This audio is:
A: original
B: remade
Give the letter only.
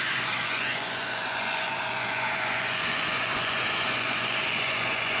B